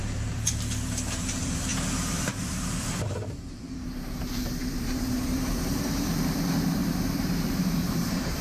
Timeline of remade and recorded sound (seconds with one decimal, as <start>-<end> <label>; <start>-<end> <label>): 0.0-8.4 remade